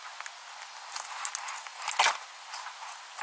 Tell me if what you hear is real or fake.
real